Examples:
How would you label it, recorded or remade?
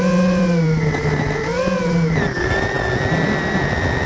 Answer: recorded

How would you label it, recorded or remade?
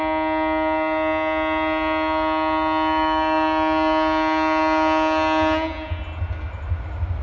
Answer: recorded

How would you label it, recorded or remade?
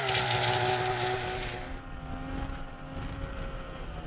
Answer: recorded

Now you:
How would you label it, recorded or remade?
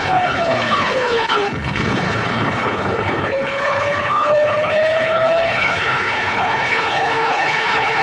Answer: remade